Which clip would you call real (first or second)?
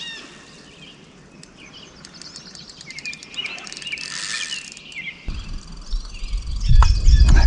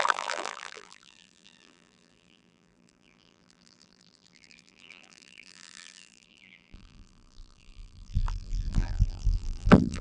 first